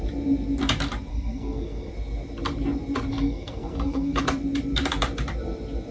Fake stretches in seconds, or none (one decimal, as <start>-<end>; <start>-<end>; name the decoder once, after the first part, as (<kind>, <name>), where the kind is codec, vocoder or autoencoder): 1.1-1.9 (codec, SNAC); 3.1-4.2